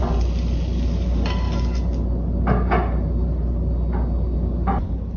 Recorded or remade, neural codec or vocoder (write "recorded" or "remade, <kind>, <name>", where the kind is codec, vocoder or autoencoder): recorded